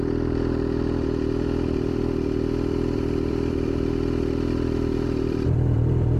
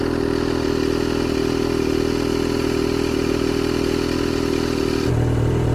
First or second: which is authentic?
second